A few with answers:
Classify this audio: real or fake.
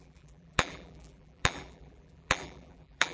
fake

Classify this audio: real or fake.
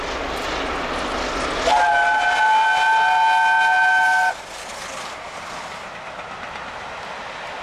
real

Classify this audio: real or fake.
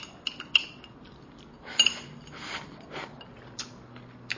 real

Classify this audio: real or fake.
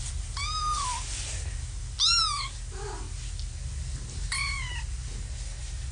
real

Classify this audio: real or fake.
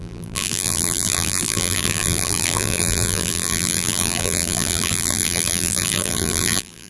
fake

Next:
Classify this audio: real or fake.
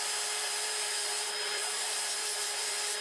fake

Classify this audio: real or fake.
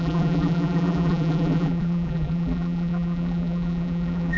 fake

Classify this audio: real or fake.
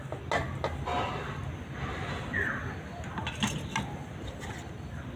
real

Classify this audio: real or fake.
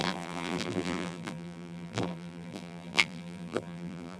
fake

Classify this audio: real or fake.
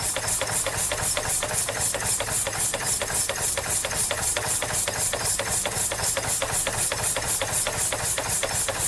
real